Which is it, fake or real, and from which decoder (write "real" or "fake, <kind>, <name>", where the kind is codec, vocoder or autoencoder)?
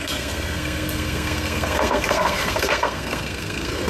fake, codec, SNAC